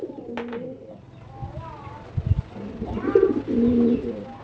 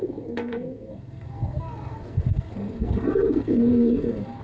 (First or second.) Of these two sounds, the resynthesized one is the second